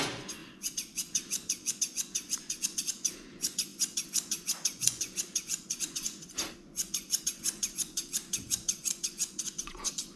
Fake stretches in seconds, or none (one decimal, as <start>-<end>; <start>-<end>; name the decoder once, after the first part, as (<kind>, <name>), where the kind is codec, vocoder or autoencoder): 0.0-10.2 (vocoder, Vocos)